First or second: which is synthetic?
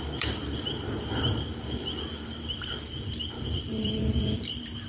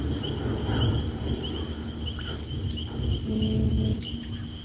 first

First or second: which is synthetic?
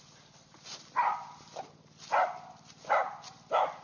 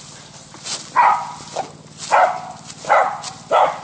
first